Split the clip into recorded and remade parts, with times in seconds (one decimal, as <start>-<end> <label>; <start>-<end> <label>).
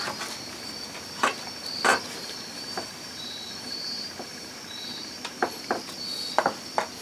0.0-1.9 recorded; 1.9-6.1 remade; 6.1-7.0 recorded